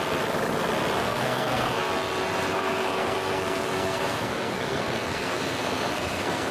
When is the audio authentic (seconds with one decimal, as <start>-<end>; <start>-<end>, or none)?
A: 0.0-1.0; 1.9-2.5